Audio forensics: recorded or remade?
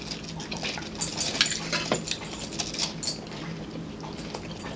recorded